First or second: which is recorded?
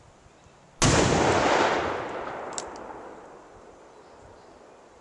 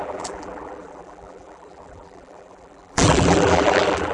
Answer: first